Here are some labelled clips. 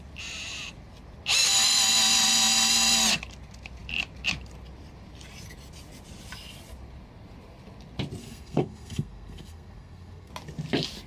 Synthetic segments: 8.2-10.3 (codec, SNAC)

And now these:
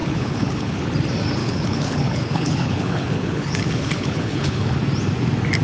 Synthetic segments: 0.0-0.9 (codec, HILCodec); 1.4-4.8

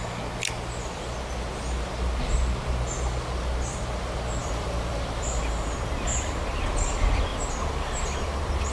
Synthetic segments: 4.4-6.6 (vocoder, BigVGAN v2); 7.3-8.7

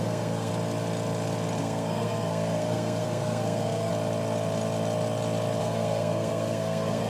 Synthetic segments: 0.0-0.5 (codec, SNAC); 1.6-3.9; 5.6-7.1

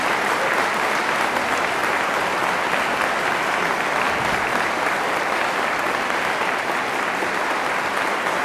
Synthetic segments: none